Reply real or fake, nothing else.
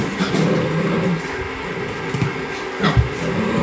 real